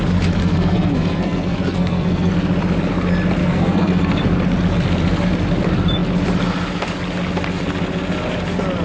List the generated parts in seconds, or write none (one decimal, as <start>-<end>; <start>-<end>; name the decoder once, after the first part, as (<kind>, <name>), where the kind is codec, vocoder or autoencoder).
0.4-2.3 (codec, SNAC); 3.4-4.2